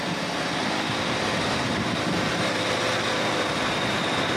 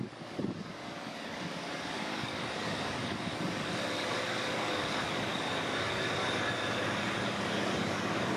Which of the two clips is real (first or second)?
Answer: first